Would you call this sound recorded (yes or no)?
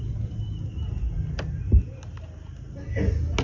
yes